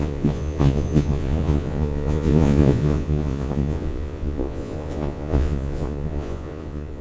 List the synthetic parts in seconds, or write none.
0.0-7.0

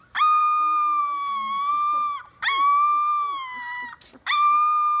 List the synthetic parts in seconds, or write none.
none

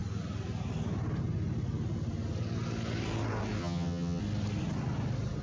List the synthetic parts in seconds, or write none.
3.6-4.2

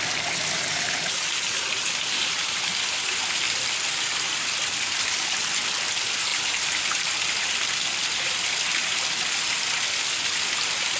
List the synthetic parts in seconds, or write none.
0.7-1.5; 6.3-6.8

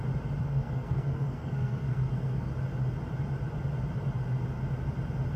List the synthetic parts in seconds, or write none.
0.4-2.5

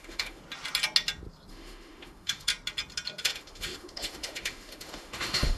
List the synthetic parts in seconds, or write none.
0.0-0.4; 1.5-2.5; 3.2-5.6

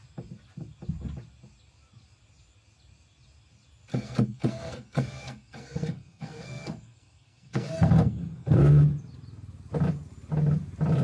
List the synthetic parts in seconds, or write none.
3.9-8.7